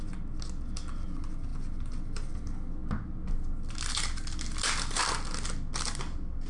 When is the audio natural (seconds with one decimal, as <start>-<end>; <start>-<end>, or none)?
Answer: 0.0-6.5